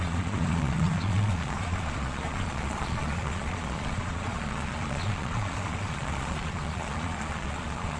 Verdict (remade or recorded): remade